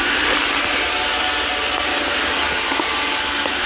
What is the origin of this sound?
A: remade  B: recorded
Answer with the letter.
B